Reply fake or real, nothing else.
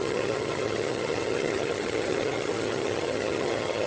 fake